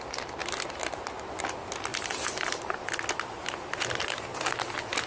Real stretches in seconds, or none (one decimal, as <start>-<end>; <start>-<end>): 0.0-5.1